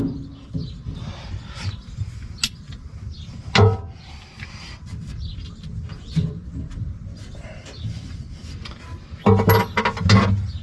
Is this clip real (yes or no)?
yes